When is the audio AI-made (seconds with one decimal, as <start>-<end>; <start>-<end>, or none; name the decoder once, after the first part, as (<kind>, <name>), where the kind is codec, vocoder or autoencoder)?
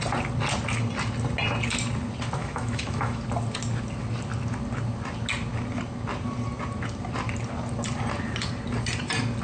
2.4-3.2 (autoencoder, DAC-VAE)